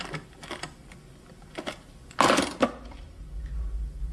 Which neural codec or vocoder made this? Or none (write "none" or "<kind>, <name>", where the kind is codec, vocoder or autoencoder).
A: none